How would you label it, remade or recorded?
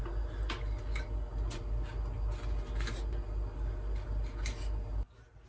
recorded